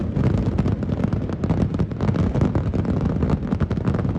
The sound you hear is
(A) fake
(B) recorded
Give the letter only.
B